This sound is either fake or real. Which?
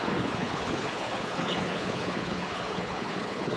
fake